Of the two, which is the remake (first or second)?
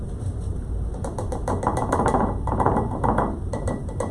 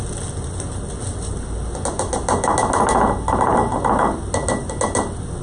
first